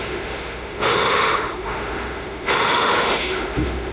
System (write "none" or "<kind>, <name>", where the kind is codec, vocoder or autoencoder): autoencoder, DAC-VAE